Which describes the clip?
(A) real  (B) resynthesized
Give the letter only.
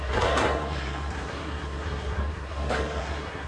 B